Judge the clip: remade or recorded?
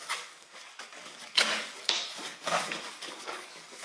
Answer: remade